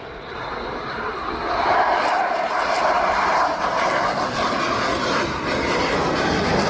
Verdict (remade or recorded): recorded